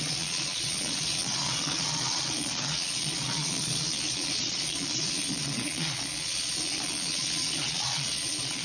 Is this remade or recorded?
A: remade